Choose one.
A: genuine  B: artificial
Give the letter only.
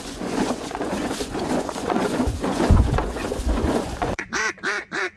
B